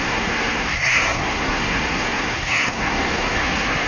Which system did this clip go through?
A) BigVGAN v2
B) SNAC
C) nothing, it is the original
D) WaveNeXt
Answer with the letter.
B